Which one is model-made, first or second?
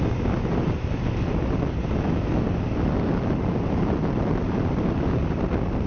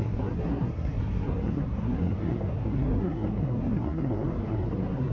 second